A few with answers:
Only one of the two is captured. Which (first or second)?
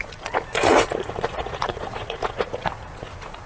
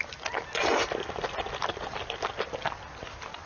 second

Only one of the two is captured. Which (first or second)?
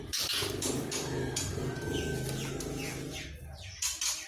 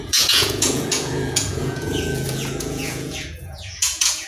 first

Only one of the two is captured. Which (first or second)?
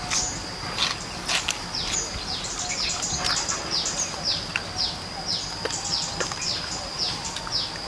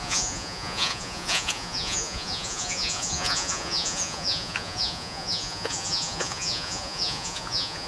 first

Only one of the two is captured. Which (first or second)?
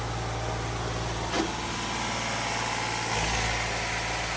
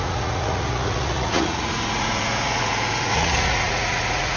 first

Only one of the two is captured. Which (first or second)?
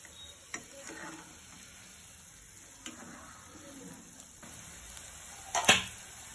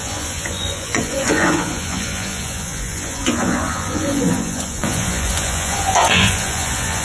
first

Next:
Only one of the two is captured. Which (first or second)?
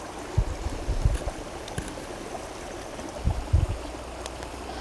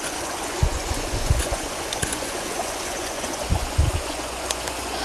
first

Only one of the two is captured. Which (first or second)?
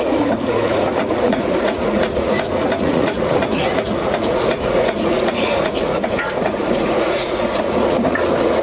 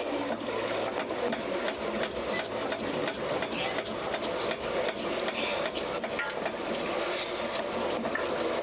second